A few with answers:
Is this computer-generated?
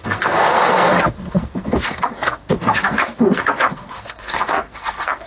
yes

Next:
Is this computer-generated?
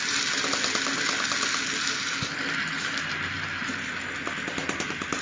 no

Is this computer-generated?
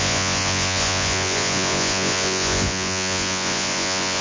yes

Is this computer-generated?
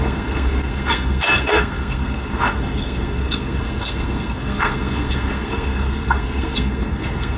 yes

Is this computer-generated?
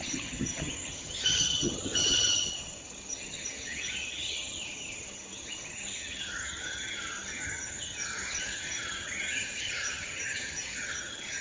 yes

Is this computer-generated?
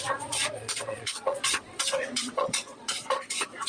yes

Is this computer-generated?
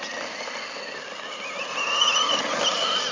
no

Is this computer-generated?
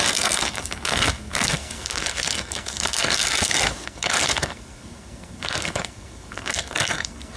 yes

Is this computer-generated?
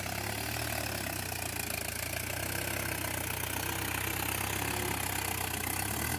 no